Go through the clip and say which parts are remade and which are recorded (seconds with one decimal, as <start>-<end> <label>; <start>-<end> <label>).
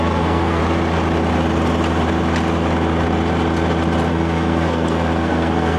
0.0-0.6 remade; 0.6-4.1 recorded; 4.1-5.8 remade